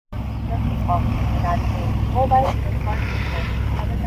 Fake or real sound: real